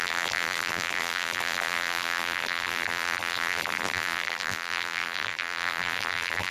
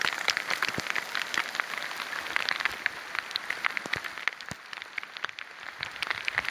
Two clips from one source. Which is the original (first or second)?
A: second